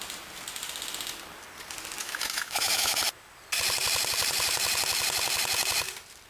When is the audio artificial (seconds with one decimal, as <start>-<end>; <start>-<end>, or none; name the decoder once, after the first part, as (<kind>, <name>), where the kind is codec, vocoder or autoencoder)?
2.0-3.0 (autoencoder, DAC-VAE)